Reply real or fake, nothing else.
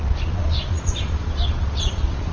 fake